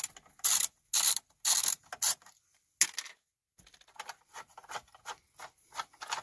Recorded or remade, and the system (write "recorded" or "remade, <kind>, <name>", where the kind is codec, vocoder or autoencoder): recorded